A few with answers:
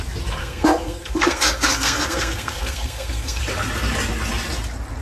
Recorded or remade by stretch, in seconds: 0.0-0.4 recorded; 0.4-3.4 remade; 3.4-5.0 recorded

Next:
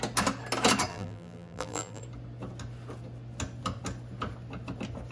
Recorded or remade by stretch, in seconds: 0.0-0.9 recorded; 0.9-2.0 remade; 2.0-5.1 recorded

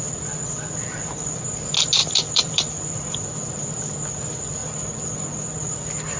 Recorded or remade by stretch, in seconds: 0.0-2.0 recorded; 2.0-3.6 remade; 3.6-6.2 recorded

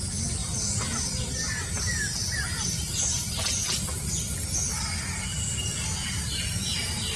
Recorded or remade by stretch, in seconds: 0.0-7.2 recorded

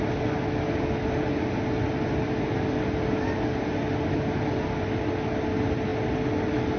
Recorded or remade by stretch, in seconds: 0.0-6.8 recorded

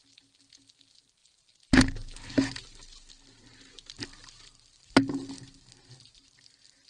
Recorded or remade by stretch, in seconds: 0.0-6.9 recorded

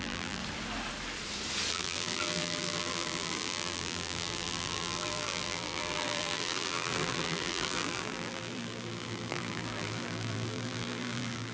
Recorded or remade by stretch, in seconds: 0.0-0.4 remade; 0.4-1.7 recorded; 1.7-11.5 remade

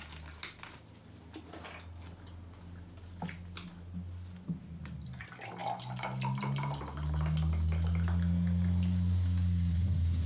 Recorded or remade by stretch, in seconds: 0.0-10.3 recorded